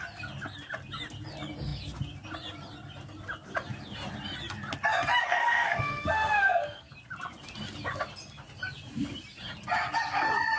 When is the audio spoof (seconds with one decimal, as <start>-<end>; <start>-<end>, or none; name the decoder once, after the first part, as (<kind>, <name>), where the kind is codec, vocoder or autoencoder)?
5.2-6.9 (codec, SNAC)